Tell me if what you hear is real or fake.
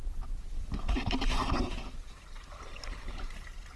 real